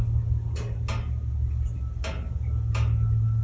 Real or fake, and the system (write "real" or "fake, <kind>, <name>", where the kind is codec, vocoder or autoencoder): real